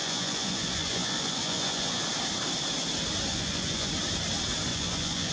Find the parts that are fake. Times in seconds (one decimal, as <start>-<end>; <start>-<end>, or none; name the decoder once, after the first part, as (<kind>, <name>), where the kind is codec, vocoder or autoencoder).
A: 0.0-2.0 (vocoder, Vocos); 3.3-3.9; 4.7-5.3